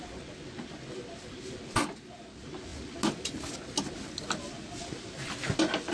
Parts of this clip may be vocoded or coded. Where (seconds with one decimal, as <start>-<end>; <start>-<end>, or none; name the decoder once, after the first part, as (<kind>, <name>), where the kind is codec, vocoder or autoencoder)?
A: none